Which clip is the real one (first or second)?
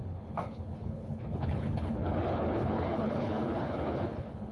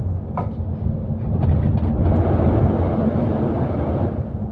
second